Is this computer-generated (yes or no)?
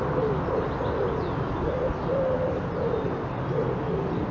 no